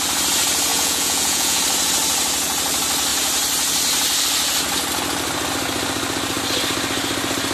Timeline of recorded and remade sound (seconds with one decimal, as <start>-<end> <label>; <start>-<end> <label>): 0.0-0.7 recorded; 0.7-1.6 remade; 1.6-7.5 recorded